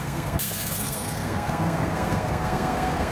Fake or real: fake